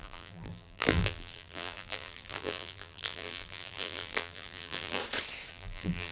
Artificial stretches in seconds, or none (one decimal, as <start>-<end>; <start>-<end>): 0.0-5.0; 5.5-6.1